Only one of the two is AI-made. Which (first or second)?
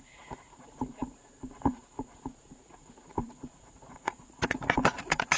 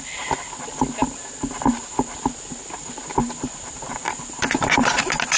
first